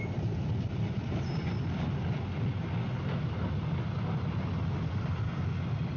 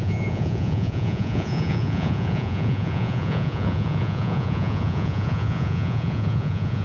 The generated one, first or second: second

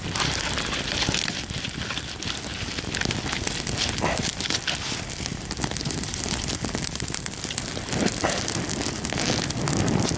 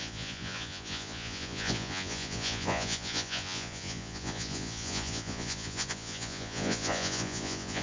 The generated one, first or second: second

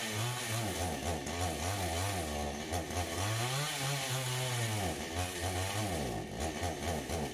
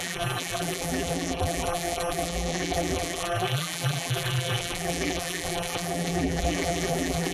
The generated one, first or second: second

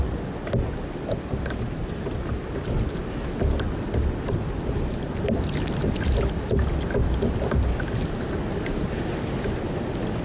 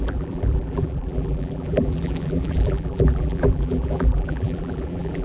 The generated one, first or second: second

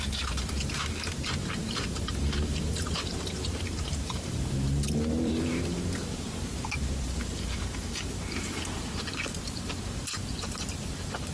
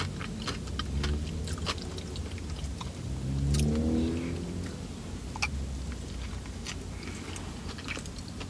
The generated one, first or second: first